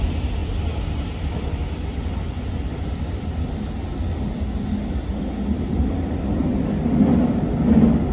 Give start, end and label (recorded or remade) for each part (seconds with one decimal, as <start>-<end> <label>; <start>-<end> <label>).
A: 0.0-8.1 recorded